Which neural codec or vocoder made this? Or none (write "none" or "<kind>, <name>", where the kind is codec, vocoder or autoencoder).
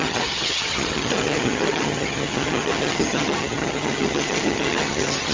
vocoder, HiFi-GAN